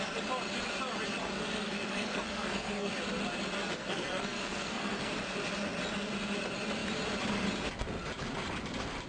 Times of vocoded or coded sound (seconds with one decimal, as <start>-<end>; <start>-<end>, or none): 1.2-2.9; 3.8-5.1